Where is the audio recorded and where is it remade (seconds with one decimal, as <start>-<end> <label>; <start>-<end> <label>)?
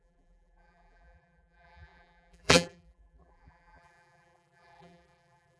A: 0.0-5.6 remade